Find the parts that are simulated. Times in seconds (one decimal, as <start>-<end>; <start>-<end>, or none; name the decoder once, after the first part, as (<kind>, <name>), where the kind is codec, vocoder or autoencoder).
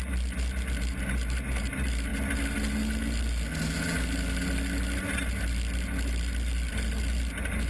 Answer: none